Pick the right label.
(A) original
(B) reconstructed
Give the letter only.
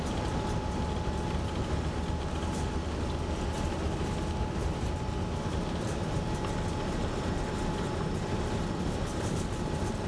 A